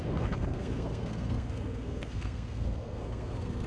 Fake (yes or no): yes